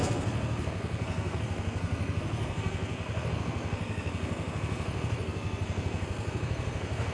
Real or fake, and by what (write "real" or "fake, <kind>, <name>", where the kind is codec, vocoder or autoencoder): fake, codec, SNAC